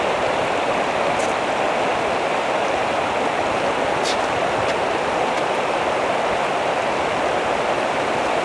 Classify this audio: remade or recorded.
recorded